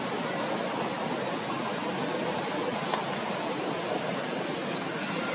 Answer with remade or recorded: recorded